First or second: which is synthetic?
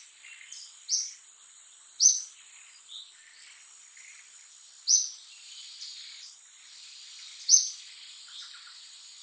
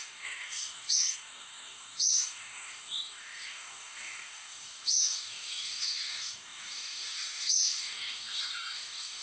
second